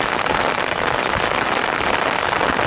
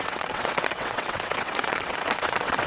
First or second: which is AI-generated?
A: second